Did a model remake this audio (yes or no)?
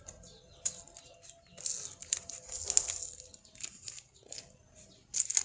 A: no